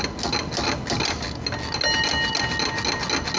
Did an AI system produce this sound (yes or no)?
no